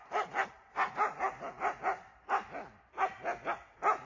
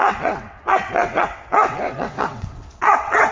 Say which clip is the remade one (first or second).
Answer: second